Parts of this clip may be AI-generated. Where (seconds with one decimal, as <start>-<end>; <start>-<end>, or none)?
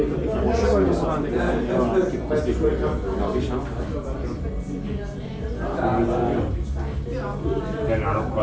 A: none